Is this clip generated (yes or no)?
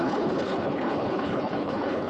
yes